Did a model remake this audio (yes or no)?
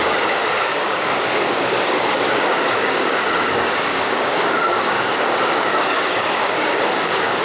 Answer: yes